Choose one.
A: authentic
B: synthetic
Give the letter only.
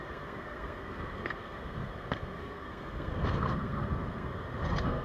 B